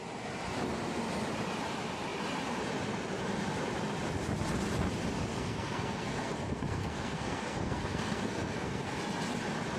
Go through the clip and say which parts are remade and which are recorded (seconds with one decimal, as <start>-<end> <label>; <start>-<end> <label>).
0.0-5.3 recorded; 5.3-9.0 remade; 9.0-9.8 recorded